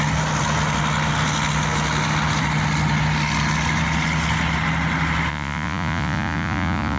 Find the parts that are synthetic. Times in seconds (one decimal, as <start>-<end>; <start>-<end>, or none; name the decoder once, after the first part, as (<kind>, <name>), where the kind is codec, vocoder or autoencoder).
5.3-7.0 (vocoder, Vocos)